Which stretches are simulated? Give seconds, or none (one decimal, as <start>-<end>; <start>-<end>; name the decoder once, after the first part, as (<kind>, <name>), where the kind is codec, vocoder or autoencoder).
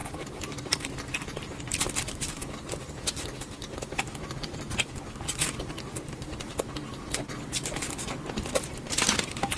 none